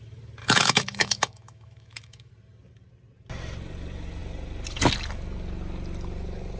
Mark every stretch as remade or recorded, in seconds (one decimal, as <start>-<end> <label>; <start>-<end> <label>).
0.0-0.4 recorded; 0.4-2.3 remade; 2.3-6.6 recorded